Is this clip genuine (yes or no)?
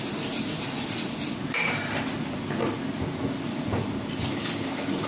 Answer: yes